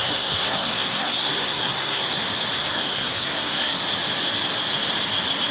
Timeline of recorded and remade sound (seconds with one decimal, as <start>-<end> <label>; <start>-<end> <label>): 0.0-2.1 remade; 2.1-2.6 recorded; 2.6-3.8 remade; 3.8-5.5 recorded